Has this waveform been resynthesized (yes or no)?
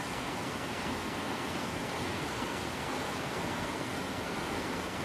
yes